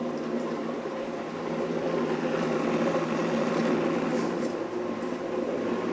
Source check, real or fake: real